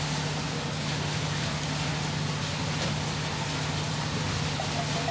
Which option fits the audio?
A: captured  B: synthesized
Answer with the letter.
A